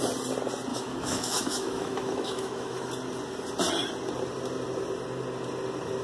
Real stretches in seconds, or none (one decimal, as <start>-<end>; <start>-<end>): 0.0-0.7; 2.9-6.0